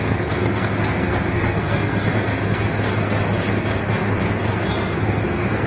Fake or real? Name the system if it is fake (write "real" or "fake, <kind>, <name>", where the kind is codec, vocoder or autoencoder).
fake, codec, SNAC